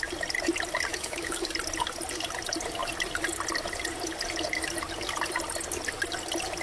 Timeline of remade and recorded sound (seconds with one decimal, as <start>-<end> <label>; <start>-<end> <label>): 0.0-0.9 recorded; 0.9-1.5 remade; 1.5-6.6 recorded